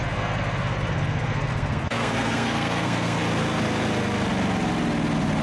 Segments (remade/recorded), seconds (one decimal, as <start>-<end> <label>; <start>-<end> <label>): 0.0-3.2 remade; 3.2-5.4 recorded